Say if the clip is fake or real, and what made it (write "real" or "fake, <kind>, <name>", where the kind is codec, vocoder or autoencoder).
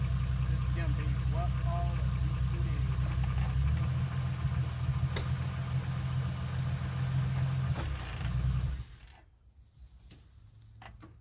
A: real